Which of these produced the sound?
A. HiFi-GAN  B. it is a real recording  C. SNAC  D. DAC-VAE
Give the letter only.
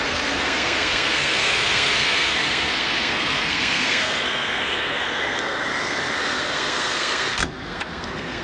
C